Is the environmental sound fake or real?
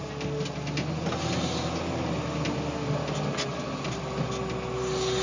real